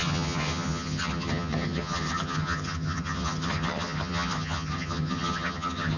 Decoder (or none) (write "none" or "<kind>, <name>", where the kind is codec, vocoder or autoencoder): vocoder, HiFi-GAN